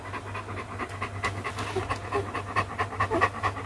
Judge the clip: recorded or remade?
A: recorded